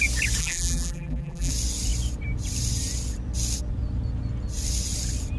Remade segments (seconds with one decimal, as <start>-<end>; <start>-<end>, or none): 0.4-1.5